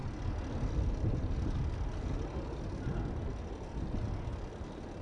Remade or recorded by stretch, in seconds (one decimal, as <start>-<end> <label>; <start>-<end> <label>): 0.0-5.0 recorded